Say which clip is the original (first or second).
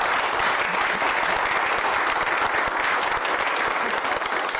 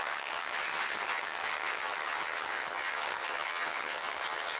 first